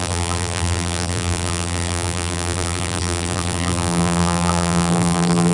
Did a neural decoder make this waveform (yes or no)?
yes